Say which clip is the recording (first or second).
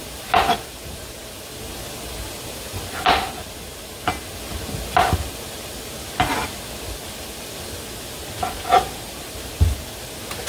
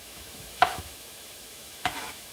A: first